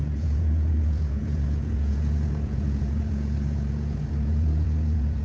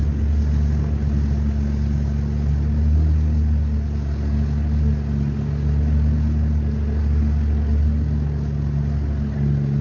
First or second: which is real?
second